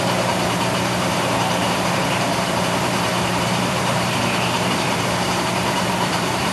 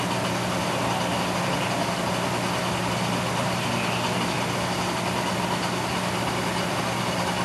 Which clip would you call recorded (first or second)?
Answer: second